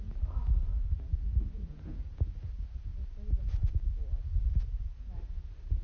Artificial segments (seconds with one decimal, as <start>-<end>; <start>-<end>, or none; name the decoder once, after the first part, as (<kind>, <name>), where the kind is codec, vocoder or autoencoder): 0.7-2.2 (vocoder, Vocos)